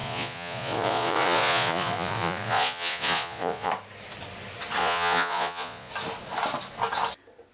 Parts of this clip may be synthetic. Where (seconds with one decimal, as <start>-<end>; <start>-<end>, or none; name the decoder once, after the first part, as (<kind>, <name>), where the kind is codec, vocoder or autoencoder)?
0.0-3.7 (vocoder, Vocos); 4.8-5.9